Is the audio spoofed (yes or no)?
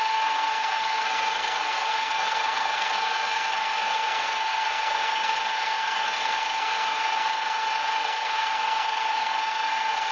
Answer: yes